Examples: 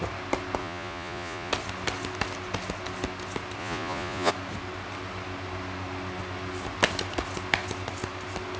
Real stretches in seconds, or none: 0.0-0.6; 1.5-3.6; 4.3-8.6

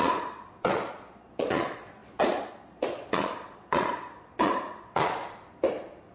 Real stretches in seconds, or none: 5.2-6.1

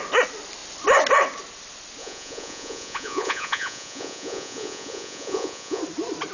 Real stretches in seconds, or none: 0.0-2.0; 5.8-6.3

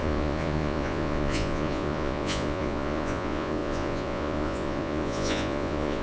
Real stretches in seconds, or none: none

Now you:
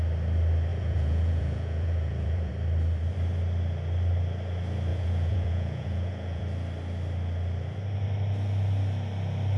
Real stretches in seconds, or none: 0.0-0.7; 2.5-4.9; 6.4-9.6

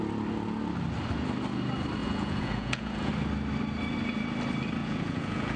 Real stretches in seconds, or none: 0.0-2.0; 3.1-4.8

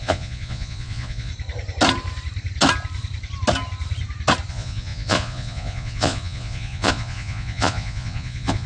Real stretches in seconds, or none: 1.3-4.5